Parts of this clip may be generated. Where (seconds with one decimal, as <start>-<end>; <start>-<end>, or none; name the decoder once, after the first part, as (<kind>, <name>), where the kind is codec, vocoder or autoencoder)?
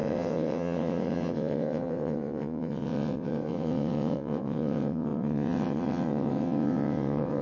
0.0-7.4 (vocoder, WaveNeXt)